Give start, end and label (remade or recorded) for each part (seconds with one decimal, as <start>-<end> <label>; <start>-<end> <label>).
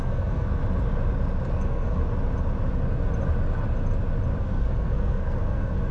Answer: 0.0-0.6 remade; 0.6-1.5 recorded; 1.5-2.0 remade; 2.0-4.4 recorded; 4.4-5.9 remade